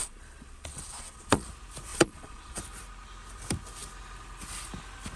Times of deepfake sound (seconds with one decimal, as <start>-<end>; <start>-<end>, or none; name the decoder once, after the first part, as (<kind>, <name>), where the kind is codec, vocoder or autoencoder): 0.0-1.5 (vocoder, Vocos); 1.9-2.6